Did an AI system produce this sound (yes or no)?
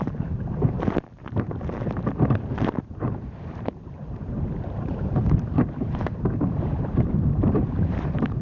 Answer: yes